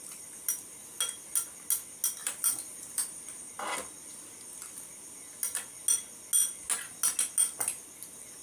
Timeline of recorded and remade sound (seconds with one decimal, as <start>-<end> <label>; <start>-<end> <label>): 0.0-2.2 recorded; 2.2-3.4 remade; 3.4-8.4 recorded